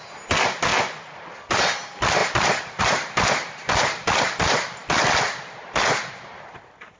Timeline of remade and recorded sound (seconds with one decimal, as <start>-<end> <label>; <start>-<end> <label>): 0.0-0.7 remade; 0.7-1.5 recorded; 1.5-7.0 remade